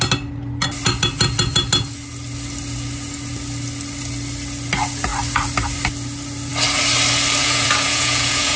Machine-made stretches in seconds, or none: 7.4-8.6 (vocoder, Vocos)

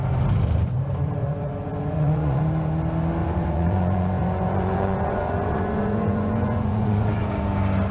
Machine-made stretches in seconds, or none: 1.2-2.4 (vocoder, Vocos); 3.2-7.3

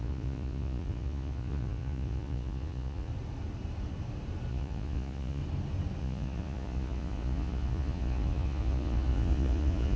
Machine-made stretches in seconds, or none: 0.0-3.1 (vocoder, Vocos); 4.5-5.4; 6.0-10.0

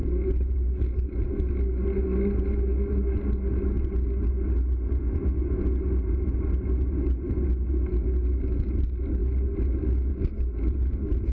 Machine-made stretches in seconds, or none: none